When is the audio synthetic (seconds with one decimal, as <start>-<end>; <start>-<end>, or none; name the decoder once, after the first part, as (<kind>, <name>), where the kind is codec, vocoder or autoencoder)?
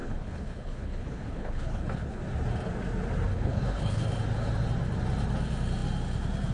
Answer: 0.0-2.2 (codec, HILCodec); 3.3-4.0